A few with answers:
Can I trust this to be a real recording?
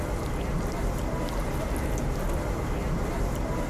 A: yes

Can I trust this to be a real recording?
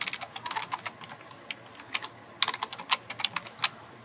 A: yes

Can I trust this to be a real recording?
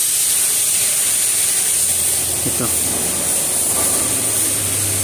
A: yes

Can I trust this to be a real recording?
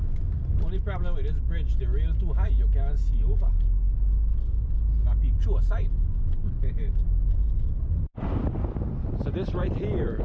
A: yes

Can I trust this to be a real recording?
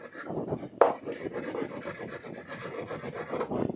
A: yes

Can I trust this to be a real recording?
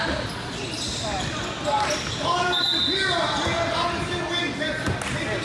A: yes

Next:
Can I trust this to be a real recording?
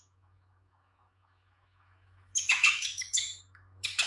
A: no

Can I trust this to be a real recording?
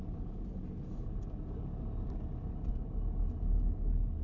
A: yes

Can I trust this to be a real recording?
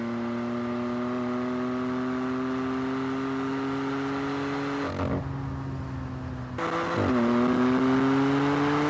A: yes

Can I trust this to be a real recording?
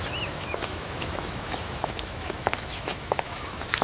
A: no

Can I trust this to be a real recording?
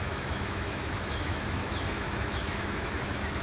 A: no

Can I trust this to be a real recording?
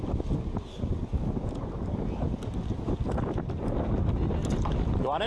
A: yes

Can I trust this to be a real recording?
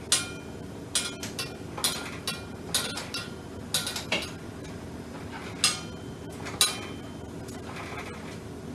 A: yes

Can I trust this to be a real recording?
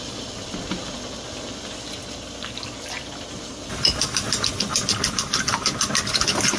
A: yes